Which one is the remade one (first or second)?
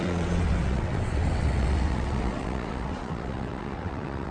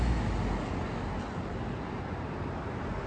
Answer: first